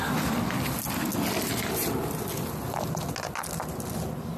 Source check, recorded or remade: recorded